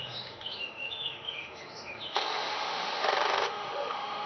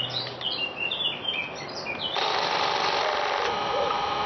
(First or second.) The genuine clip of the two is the second